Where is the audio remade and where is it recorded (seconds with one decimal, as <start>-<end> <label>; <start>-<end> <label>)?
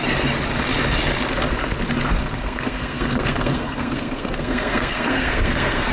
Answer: 0.0-2.2 recorded; 2.2-5.9 remade